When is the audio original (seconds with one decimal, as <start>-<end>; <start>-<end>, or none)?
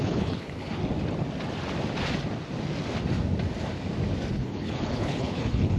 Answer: 0.8-4.3